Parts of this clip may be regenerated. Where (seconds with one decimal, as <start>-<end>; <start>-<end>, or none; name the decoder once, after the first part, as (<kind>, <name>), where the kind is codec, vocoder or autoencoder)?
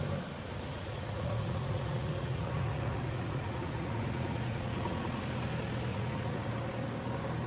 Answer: 0.7-5.2 (vocoder, Vocos); 5.9-6.5